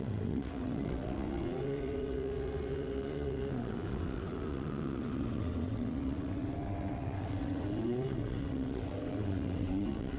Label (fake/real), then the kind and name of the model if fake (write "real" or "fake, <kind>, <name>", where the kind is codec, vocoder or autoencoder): fake, vocoder, WaveNeXt